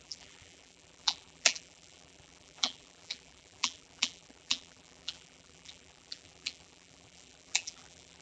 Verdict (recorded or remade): remade